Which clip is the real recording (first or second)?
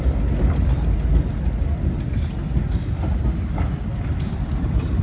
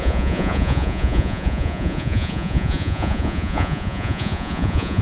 first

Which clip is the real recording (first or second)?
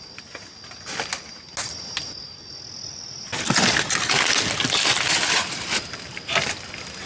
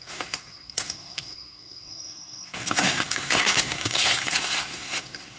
first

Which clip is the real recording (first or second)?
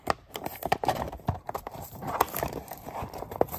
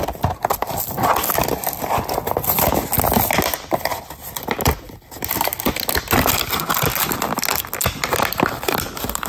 second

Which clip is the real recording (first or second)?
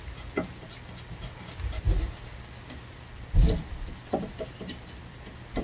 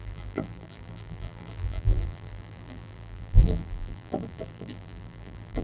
first